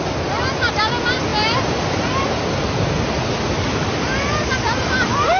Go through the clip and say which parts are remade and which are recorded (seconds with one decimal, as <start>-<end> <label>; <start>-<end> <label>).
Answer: 0.0-5.4 recorded